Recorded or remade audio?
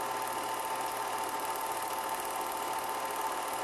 recorded